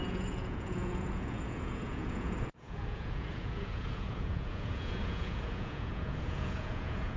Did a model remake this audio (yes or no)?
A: yes